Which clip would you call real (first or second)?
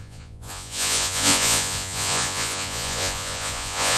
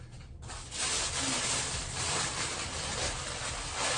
second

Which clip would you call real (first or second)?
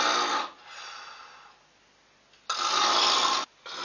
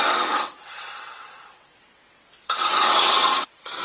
first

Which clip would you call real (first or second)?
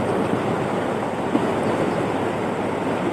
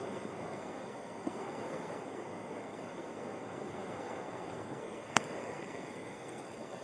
first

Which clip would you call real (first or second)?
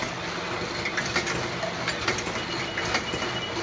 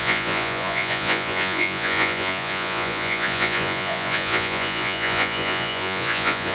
first